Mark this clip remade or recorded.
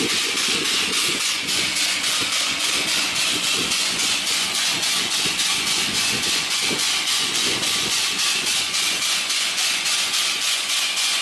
remade